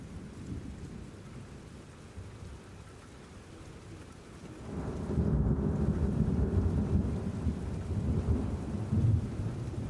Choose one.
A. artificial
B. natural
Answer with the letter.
B